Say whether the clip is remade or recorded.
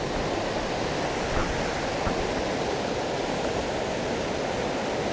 recorded